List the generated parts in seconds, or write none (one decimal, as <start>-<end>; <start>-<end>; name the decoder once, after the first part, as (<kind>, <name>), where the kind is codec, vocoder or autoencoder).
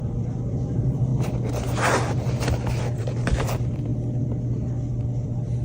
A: 0.0-1.1 (vocoder, BigVGAN v2); 2.8-3.9; 5.0-5.6